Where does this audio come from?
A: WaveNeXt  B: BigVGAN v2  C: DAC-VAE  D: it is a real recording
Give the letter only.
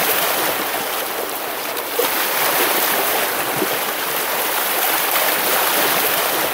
D